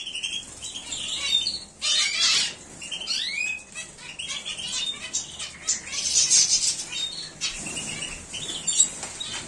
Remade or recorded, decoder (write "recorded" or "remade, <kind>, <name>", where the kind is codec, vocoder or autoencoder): recorded